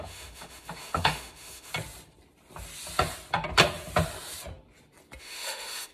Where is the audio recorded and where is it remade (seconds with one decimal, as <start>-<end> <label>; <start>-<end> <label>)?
0.0-1.7 remade; 1.7-5.2 recorded; 5.2-5.9 remade